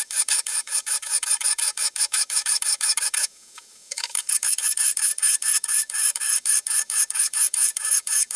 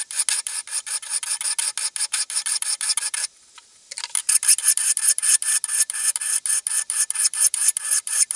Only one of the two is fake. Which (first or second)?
first